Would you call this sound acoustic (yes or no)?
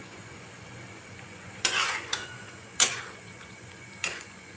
no